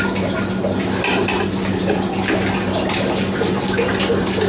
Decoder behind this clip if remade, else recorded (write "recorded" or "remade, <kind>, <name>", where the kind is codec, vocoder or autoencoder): recorded